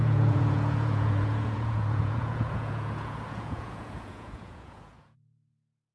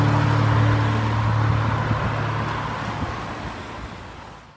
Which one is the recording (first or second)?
second